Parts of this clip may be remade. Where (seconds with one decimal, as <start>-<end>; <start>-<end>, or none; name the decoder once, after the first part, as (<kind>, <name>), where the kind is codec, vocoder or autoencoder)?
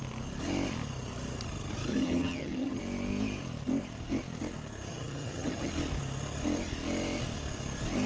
1.9-2.8 (vocoder, HiFi-GAN); 4.9-5.7